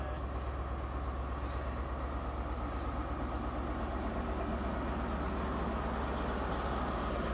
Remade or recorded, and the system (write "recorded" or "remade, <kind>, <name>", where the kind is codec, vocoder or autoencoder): recorded